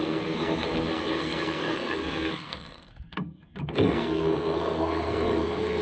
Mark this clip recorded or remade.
remade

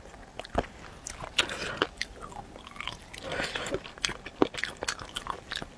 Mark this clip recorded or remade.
recorded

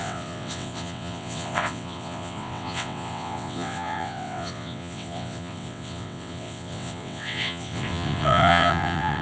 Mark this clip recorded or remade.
remade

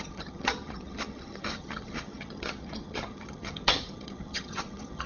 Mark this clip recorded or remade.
remade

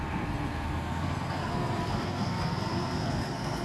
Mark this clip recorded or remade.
remade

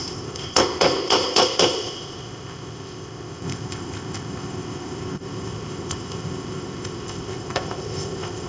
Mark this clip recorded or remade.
remade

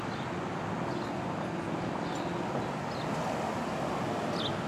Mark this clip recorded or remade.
recorded